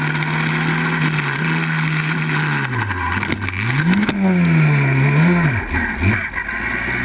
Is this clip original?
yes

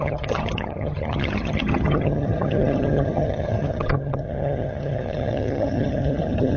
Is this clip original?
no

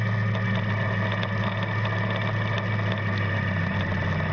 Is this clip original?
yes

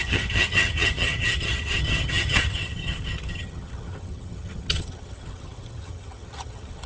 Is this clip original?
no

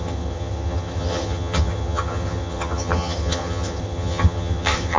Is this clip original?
no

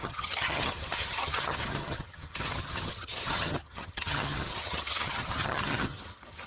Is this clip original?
no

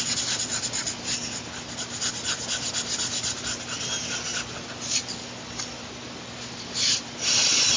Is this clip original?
yes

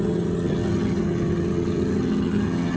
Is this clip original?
no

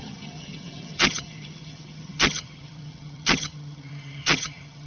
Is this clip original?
no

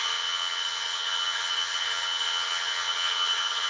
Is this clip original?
no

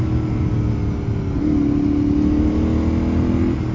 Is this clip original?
yes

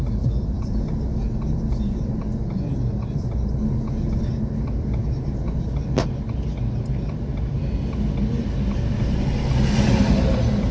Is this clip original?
yes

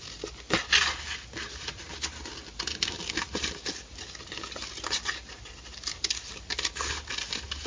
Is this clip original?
yes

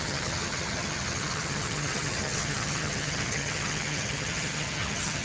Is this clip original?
no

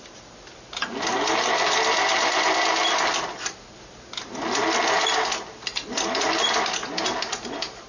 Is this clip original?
yes